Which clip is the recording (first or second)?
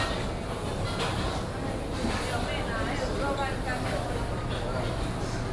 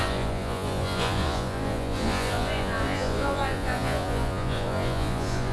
first